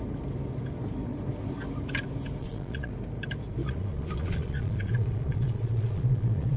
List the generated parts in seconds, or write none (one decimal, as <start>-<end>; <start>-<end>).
2.4-2.9; 3.6-6.6